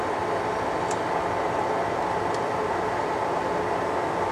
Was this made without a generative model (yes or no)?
yes